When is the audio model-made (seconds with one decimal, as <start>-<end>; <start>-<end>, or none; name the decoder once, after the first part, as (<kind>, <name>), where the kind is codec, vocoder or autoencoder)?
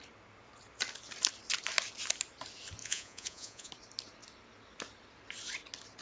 2.8-3.7 (vocoder, Vocos)